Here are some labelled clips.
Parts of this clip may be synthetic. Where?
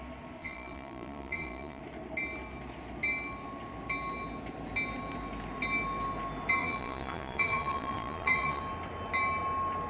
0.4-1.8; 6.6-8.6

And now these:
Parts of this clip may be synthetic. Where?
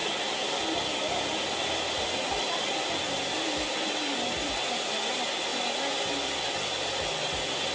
none